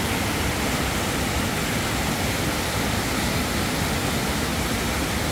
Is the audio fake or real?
real